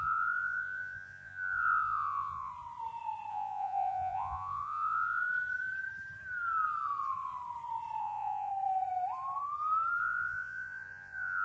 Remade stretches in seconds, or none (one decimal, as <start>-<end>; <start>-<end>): 0.0-2.5; 3.3-5.2; 8.0-8.5; 10.0-11.4